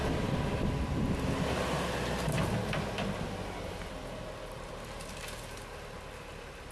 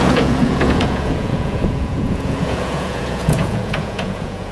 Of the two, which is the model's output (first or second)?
second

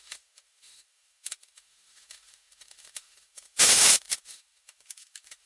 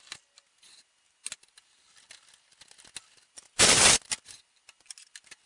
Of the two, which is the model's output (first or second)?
first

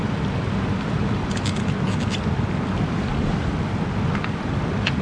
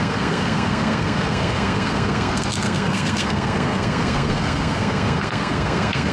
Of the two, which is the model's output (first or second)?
second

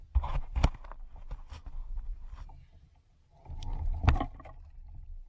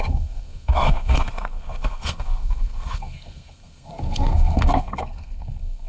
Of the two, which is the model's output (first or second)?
second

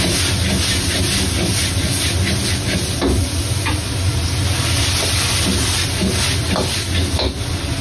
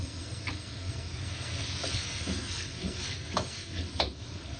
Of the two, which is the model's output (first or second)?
second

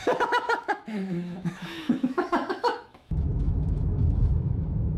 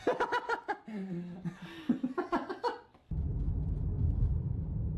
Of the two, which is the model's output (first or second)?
first